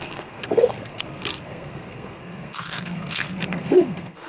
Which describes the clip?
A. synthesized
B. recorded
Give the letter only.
A